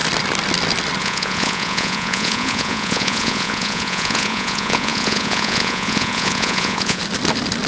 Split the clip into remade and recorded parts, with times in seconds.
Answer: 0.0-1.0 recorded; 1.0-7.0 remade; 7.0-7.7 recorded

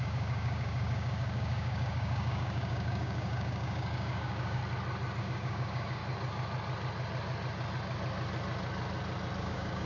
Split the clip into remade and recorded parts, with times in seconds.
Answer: 0.0-4.6 remade; 4.6-5.2 recorded; 5.2-6.0 remade; 6.0-9.4 recorded; 9.4-9.9 remade

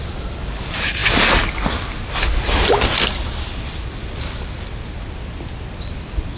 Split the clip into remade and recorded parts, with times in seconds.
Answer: 0.0-6.4 recorded

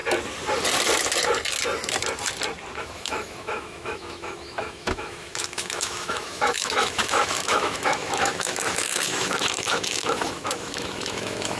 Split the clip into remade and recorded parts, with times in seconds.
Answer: 0.0-2.8 recorded; 2.8-11.6 remade

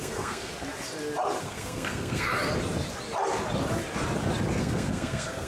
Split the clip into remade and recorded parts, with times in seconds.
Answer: 0.0-0.5 remade; 0.5-1.4 recorded; 1.4-2.3 remade; 2.3-4.6 recorded; 4.6-5.5 remade